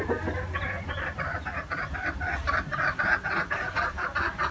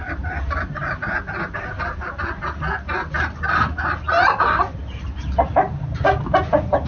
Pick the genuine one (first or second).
second